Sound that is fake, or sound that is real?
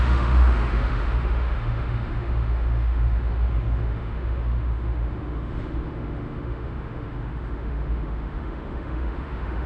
fake